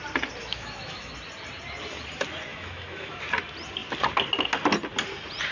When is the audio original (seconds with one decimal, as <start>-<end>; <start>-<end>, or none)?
0.0-0.4; 1.1-2.5; 3.2-5.5